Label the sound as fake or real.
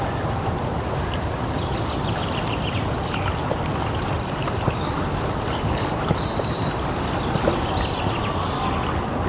real